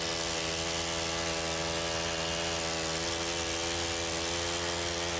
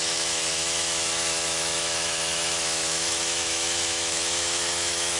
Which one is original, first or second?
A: first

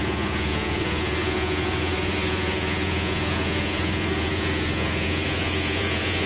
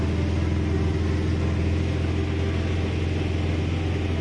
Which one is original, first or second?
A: second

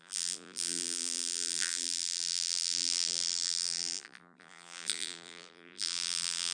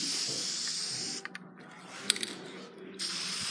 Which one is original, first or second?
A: second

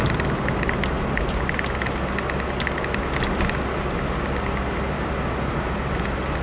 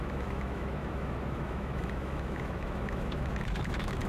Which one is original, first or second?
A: first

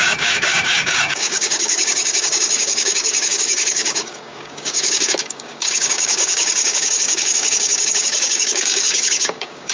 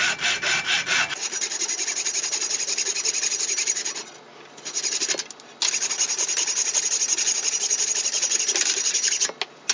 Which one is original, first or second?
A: second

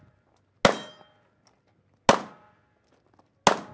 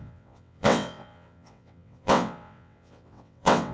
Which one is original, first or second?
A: first